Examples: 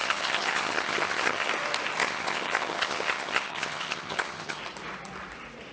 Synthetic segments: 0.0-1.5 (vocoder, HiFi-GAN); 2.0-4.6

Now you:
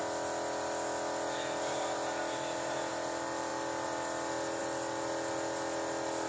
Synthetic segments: none

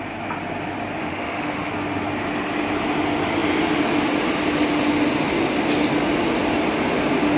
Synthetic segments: 1.0-1.7 (autoencoder, DAC-VAE)

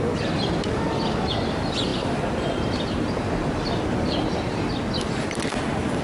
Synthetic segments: none